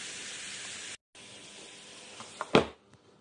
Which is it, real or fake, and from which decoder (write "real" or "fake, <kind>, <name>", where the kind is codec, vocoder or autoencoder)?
real